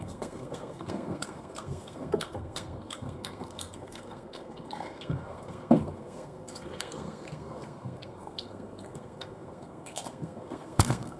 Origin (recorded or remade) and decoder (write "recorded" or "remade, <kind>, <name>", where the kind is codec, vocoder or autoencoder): remade, codec, SNAC